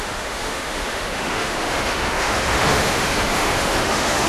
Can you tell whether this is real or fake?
fake